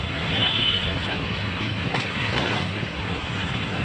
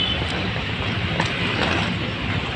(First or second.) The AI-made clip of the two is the first